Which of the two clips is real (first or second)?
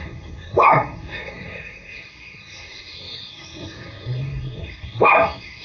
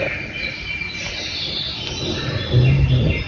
second